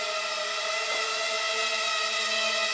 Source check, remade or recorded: recorded